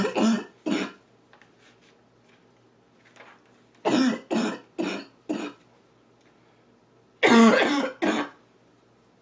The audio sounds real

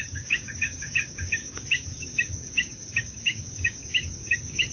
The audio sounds fake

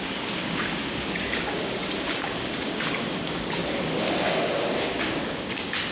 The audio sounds fake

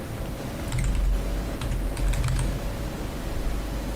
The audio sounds real